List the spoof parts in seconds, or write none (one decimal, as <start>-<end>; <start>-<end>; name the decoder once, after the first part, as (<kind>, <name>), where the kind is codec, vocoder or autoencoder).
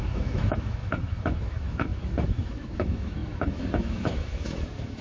0.0-5.0 (autoencoder, DAC-VAE)